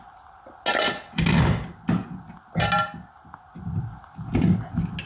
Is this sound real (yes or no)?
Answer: yes